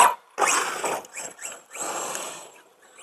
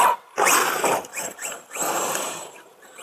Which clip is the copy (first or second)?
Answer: second